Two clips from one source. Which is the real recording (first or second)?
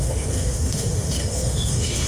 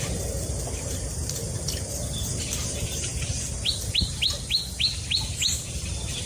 second